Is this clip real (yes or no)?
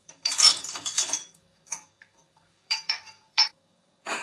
no